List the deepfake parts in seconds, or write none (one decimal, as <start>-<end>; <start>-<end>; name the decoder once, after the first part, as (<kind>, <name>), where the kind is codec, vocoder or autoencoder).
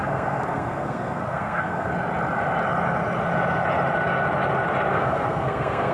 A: 0.0-1.9 (codec, SNAC); 4.9-5.9